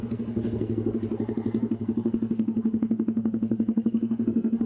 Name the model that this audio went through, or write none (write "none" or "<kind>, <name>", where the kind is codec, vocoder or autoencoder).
codec, SNAC